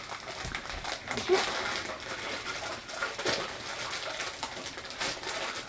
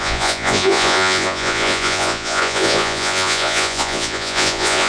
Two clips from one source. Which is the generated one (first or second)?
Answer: second